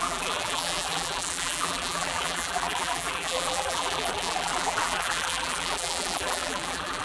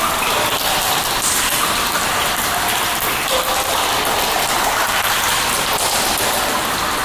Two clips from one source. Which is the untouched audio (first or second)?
second